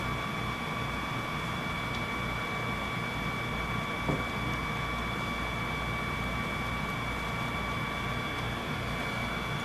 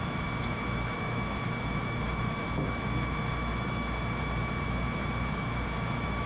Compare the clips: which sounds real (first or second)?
first